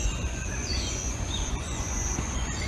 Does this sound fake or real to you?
fake